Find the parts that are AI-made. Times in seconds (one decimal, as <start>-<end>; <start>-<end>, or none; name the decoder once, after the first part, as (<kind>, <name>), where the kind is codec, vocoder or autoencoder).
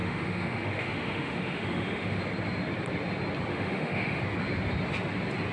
0.0-2.2 (autoencoder, DAC-VAE); 3.5-4.2